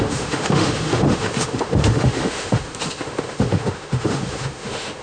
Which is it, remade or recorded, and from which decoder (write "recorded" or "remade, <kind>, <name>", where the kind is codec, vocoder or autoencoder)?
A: remade, autoencoder, DAC-VAE